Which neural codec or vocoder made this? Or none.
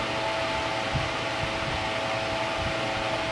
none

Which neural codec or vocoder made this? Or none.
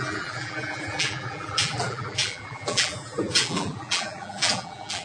vocoder, BigVGAN v2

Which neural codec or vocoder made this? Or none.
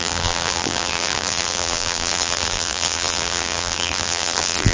vocoder, BigVGAN v2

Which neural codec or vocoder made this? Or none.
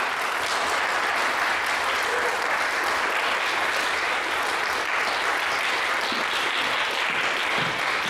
none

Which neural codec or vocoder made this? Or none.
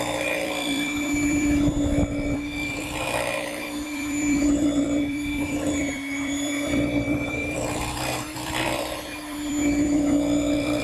vocoder, BigVGAN v2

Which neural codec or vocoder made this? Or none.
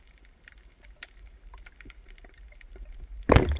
vocoder, BigVGAN v2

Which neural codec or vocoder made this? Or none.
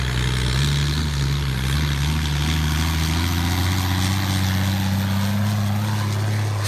none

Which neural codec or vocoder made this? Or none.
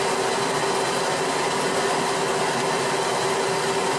none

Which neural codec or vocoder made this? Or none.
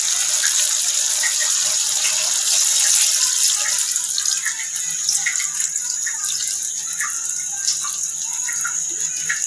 none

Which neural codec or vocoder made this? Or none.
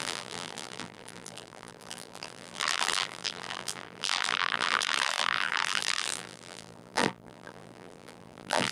vocoder, BigVGAN v2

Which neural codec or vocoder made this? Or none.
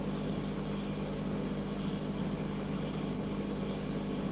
none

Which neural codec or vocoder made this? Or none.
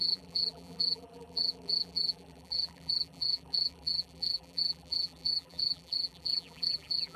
vocoder, BigVGAN v2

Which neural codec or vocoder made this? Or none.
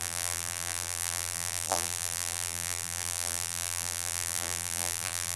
vocoder, BigVGAN v2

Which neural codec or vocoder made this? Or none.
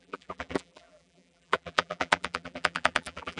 vocoder, BigVGAN v2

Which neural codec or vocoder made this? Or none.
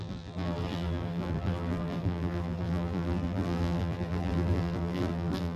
vocoder, BigVGAN v2